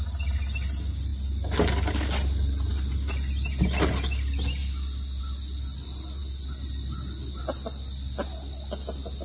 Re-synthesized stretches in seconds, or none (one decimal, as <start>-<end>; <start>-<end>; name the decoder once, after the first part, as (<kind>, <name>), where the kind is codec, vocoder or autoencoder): none